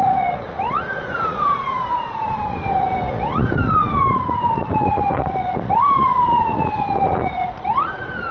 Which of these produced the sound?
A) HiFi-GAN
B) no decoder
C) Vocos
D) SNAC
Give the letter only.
C